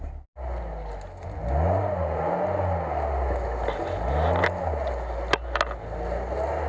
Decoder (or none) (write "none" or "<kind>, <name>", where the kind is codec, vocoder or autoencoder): none